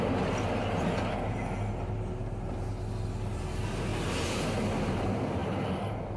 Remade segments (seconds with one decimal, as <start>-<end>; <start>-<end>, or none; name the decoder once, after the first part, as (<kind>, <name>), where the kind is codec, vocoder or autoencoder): none

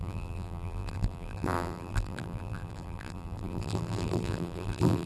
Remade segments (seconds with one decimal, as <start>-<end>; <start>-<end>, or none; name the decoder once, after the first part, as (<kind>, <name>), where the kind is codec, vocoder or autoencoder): 0.0-5.1 (vocoder, BigVGAN v2)

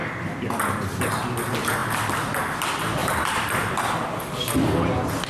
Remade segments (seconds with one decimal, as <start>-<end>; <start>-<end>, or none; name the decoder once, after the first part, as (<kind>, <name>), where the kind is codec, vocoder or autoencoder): 1.8-2.4 (vocoder, BigVGAN v2); 3.0-4.3

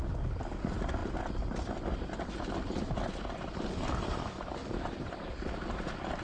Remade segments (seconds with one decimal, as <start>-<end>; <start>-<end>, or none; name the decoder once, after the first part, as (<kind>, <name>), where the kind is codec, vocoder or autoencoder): none

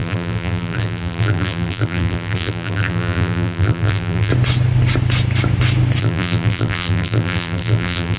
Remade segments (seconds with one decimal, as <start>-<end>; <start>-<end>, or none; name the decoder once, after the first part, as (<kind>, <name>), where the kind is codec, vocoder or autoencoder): 0.0-4.3 (vocoder, BigVGAN v2); 6.0-8.2

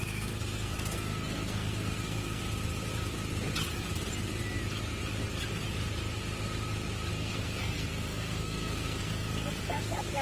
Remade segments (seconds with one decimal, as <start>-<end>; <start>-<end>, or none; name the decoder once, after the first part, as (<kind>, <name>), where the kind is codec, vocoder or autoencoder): 0.0-2.4 (codec, SNAC); 7.1-10.2